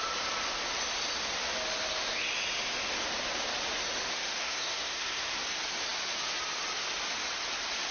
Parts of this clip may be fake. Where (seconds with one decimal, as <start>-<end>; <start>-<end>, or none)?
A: 4.4-5.4

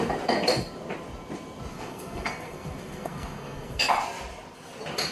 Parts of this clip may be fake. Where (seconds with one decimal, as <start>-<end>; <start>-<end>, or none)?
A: 1.7-3.8

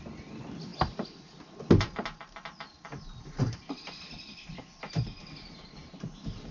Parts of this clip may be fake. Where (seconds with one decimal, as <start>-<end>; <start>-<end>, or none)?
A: none